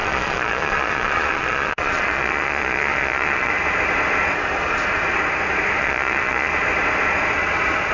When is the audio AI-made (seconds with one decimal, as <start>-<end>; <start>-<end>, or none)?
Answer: 0.0-3.5; 5.8-6.5